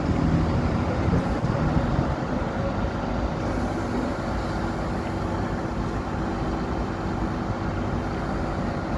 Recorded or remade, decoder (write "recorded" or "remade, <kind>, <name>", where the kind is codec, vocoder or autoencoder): recorded